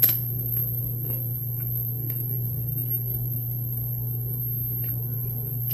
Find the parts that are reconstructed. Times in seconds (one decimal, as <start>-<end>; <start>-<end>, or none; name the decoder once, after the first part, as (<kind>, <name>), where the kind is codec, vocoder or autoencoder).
0.0-4.4 (codec, SNAC); 4.9-5.7